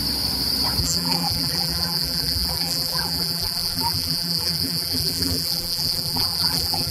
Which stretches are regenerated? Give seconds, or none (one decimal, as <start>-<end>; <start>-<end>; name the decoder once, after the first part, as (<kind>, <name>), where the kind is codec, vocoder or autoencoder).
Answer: 0.8-6.9 (vocoder, BigVGAN v2)